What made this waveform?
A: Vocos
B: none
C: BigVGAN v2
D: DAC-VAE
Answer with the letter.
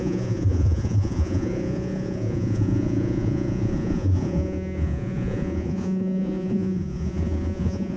A